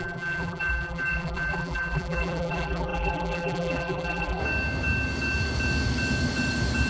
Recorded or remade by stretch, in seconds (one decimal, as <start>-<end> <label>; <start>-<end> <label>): 0.0-4.4 remade; 4.4-6.9 recorded